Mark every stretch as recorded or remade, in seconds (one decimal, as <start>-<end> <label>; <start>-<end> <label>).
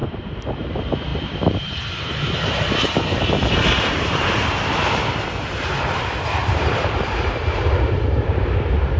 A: 0.0-0.7 remade; 0.7-1.1 recorded; 1.1-5.0 remade; 5.0-6.4 recorded; 6.4-9.0 remade